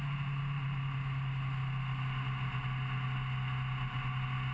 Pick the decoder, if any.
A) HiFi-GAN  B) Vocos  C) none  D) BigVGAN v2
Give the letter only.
C